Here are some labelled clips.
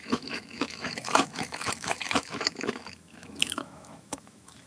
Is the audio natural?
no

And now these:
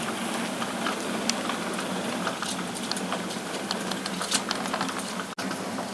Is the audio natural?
yes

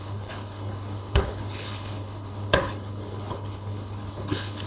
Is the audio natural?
no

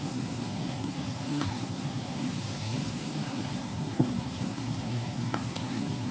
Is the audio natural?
no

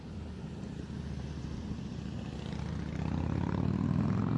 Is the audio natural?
yes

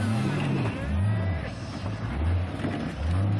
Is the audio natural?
yes